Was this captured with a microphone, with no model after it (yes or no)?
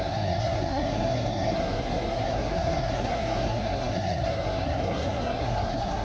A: no